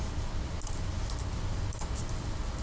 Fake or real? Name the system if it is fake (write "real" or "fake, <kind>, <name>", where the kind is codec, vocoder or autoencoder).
real